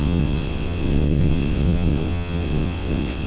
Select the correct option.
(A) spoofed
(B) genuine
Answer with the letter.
A